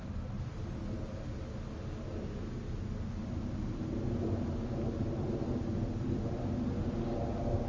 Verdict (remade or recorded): recorded